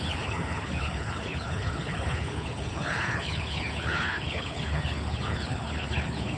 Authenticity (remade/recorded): remade